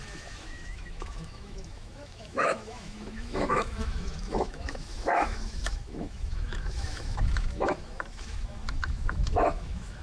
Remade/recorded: remade